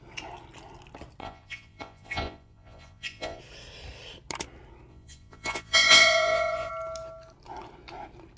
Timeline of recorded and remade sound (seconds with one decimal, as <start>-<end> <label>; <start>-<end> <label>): 0.0-1.2 recorded; 1.2-3.4 remade; 3.4-4.9 recorded; 4.9-6.7 remade; 6.7-8.4 recorded